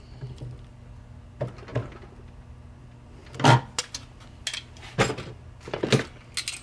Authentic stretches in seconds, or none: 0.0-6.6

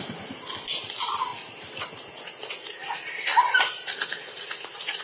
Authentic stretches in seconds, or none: 0.0-1.3; 2.1-2.8

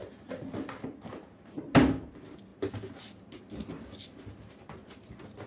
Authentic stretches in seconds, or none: 0.0-5.5

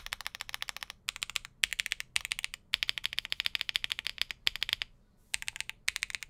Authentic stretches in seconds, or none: 0.0-6.3